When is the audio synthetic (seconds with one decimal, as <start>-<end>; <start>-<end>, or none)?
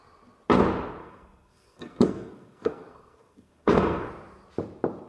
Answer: 1.0-4.1